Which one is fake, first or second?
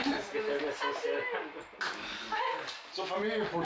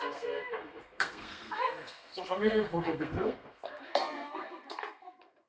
second